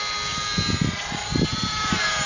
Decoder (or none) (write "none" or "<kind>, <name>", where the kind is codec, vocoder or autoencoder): none